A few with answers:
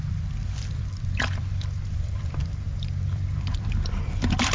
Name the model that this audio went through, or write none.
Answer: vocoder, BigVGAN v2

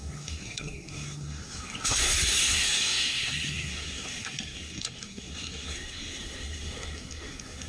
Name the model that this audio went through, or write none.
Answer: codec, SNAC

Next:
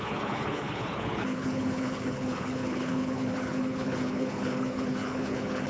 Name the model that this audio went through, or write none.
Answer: codec, HILCodec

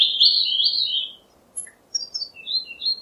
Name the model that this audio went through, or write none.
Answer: none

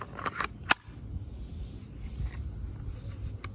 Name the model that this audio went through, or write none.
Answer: none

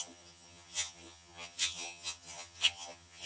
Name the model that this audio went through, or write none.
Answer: vocoder, HiFi-GAN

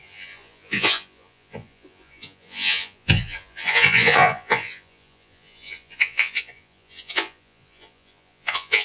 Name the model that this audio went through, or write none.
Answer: vocoder, Vocos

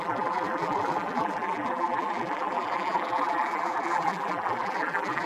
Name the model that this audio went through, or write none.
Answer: vocoder, BigVGAN v2